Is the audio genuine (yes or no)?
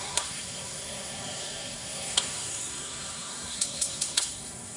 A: no